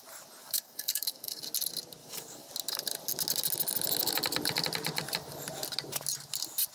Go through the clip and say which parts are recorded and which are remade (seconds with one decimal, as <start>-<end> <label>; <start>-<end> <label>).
0.0-0.4 recorded; 0.4-1.4 remade; 1.4-2.0 recorded; 2.0-2.5 remade; 2.5-6.7 recorded